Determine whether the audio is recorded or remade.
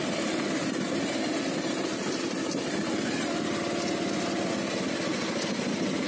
recorded